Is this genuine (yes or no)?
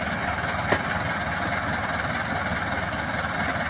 yes